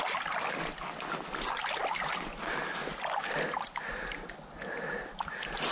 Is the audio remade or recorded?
recorded